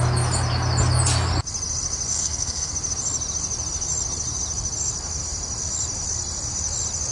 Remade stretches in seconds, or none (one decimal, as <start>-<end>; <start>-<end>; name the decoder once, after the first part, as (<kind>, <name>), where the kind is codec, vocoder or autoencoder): 2.1-2.7 (codec, SNAC)